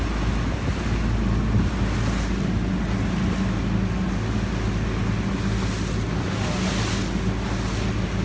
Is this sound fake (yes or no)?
no